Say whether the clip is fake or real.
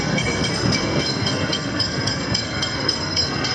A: fake